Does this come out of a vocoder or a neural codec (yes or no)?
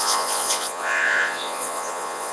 yes